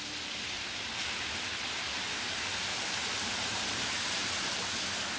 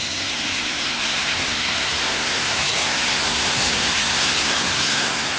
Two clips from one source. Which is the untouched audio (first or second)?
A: first